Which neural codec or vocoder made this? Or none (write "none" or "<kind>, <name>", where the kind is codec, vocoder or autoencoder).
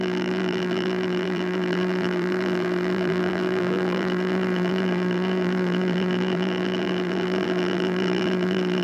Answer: vocoder, BigVGAN v2